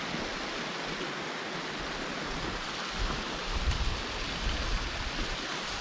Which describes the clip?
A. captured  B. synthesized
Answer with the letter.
A